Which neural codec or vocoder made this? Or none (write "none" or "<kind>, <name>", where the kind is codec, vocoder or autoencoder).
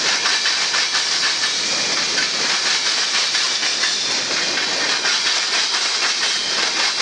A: none